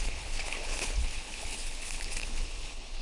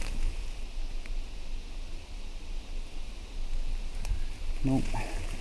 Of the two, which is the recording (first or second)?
second